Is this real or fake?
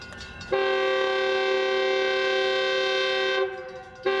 real